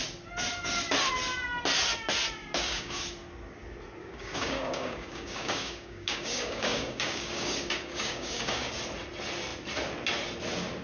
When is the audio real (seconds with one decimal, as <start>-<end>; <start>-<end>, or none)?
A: 0.0-2.4; 3.0-4.0; 8.7-10.8